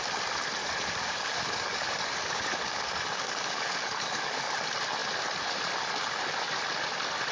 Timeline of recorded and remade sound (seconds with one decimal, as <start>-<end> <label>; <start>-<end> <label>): 0.0-0.6 recorded; 0.6-4.5 remade; 4.5-7.3 recorded